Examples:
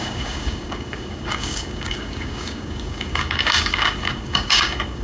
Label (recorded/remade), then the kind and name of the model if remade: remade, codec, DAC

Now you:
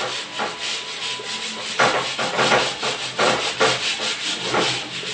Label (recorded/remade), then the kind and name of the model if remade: recorded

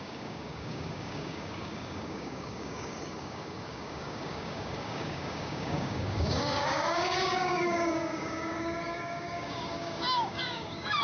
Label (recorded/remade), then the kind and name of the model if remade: remade, codec, DAC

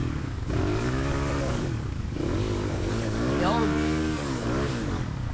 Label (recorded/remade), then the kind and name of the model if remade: remade, codec, DAC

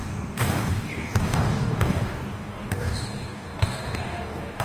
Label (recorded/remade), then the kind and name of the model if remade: remade, codec, DAC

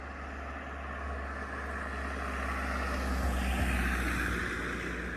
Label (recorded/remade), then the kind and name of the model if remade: recorded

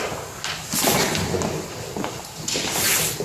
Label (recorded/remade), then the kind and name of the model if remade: recorded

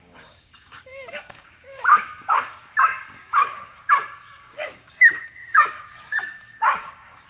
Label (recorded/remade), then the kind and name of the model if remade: remade, codec, DAC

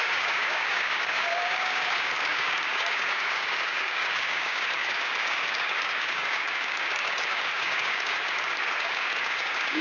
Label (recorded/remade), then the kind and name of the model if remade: remade, codec, DAC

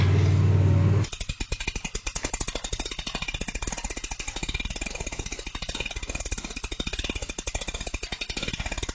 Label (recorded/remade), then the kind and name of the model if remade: recorded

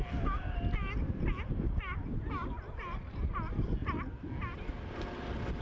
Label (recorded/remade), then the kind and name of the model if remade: recorded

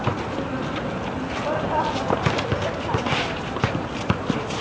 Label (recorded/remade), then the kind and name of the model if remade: recorded